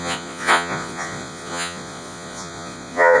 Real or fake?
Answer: fake